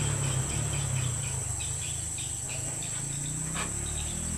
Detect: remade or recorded recorded